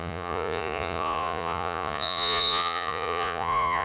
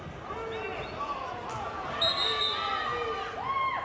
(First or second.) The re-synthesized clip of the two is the first